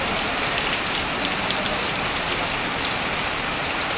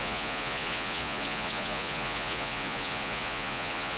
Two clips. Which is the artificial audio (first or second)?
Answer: second